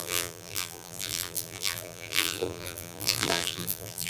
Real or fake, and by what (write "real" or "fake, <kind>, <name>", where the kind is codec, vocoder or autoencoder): fake, vocoder, BigVGAN v2